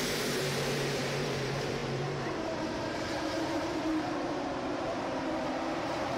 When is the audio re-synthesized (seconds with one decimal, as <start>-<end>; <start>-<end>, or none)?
0.0-6.2